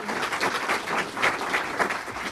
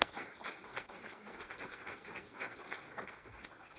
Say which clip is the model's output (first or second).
second